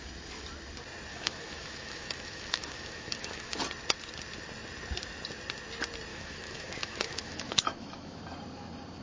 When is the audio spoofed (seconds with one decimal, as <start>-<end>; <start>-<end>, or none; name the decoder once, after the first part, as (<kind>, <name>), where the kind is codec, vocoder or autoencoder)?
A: 1.1-3.6 (autoencoder, DAC-VAE); 6.1-8.2